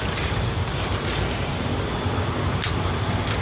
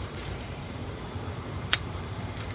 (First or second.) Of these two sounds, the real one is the first